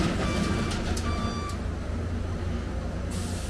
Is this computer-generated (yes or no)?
no